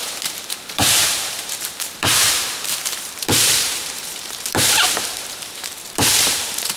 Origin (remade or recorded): remade